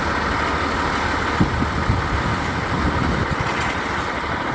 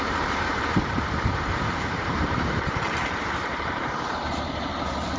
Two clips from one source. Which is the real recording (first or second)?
first